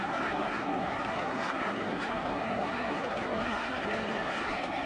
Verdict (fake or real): fake